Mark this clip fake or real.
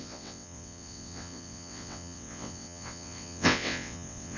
fake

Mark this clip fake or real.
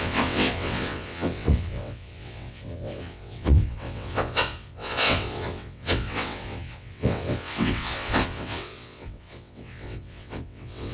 fake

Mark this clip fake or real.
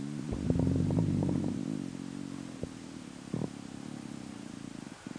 real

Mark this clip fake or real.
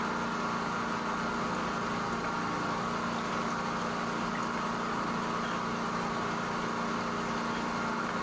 real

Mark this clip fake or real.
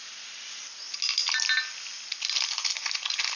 real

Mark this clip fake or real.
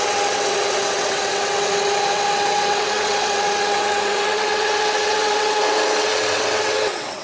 fake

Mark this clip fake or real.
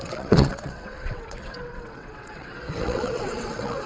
fake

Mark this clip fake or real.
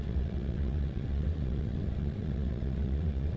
fake